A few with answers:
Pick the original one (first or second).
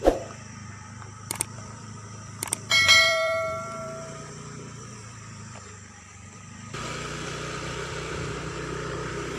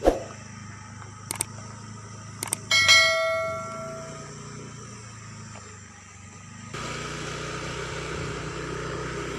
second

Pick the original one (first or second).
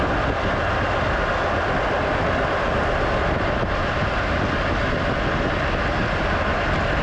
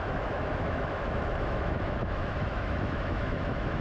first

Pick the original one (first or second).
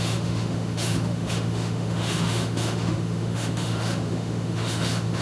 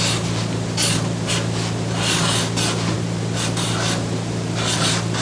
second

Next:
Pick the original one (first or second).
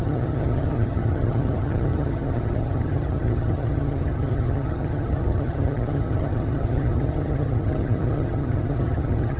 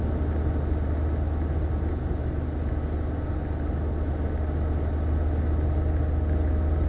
second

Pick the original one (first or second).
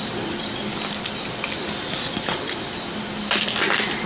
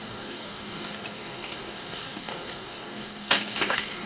first